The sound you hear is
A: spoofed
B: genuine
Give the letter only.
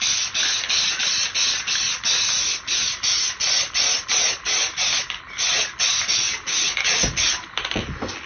B